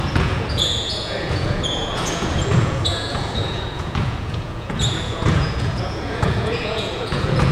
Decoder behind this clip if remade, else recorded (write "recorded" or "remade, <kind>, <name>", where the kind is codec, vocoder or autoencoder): remade, vocoder, Vocos